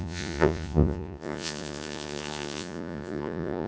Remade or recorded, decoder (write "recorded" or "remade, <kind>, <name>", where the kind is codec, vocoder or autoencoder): remade, vocoder, Vocos